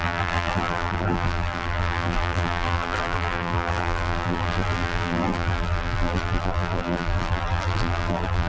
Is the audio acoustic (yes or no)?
no